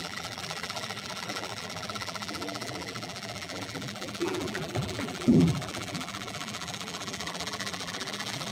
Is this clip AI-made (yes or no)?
yes